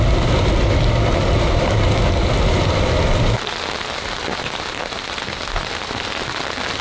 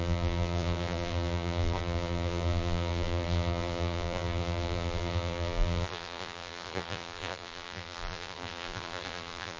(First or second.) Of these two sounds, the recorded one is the first